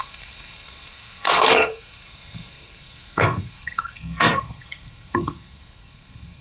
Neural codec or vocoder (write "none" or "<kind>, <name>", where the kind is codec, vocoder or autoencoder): codec, SNAC